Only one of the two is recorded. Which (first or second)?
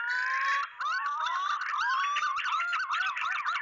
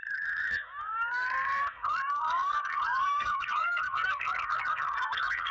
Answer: first